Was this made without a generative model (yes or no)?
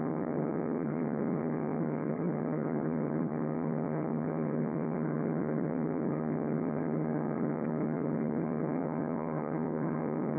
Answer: no